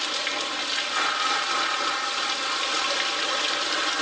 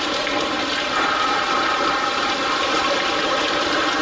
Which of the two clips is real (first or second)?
first